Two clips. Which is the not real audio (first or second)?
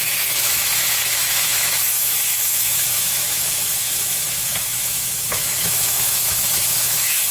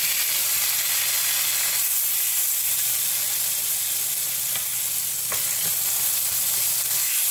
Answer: first